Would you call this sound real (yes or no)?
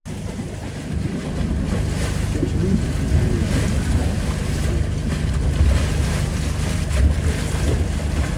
yes